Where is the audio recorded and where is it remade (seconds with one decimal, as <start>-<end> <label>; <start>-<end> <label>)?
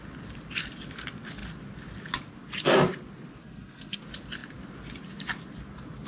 0.0-3.4 recorded; 3.4-4.0 remade; 4.0-6.1 recorded